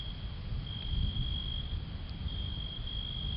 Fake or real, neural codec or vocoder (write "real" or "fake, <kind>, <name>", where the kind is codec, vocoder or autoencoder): real